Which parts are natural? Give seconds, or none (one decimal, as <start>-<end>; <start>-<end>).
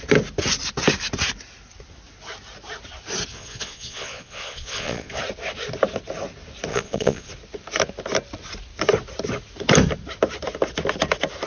0.0-3.3; 5.2-6.7; 7.3-11.5